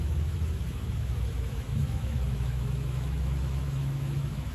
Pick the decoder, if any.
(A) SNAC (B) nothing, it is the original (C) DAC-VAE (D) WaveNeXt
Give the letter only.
C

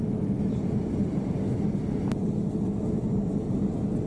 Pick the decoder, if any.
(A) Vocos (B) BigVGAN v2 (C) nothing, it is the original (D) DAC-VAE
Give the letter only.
C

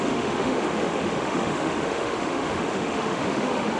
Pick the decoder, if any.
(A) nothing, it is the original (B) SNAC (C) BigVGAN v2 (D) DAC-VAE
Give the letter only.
D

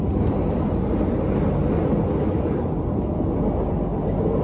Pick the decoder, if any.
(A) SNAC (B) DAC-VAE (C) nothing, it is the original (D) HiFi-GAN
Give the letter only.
C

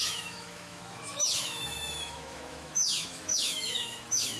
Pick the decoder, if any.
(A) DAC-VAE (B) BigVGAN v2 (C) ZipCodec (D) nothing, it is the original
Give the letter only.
A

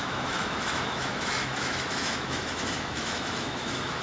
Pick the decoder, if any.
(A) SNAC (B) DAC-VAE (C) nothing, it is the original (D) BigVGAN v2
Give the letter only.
B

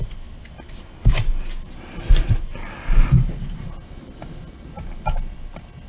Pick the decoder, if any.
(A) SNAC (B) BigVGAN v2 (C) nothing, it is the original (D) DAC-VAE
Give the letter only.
C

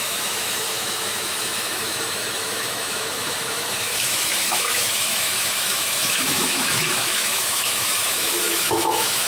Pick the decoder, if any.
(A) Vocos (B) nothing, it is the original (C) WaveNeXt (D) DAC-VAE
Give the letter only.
D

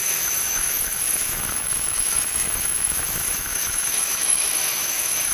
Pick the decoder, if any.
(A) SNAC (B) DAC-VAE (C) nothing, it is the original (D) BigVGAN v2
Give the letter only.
B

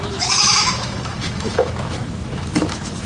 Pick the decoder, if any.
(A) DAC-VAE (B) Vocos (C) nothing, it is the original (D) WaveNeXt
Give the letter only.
A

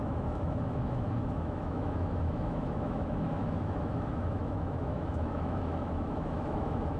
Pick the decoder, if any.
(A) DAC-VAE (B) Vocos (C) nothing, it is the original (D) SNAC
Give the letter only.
A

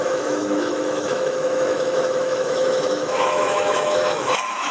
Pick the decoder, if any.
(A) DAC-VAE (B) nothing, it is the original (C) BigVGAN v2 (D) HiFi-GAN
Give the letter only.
A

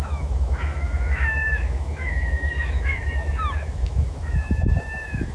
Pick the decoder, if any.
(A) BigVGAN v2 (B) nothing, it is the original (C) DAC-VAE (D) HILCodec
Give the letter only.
C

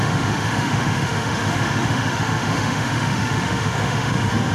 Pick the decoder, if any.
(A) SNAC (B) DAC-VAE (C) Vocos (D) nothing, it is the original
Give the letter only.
B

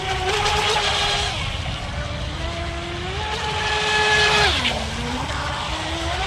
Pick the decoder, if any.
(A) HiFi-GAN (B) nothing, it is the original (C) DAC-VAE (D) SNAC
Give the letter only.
B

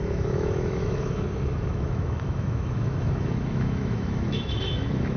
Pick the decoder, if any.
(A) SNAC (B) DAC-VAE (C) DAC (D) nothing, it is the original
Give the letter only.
B